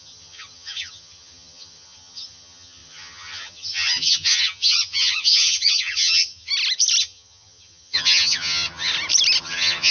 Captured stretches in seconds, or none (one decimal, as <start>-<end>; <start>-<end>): 6.5-7.0; 8.9-9.4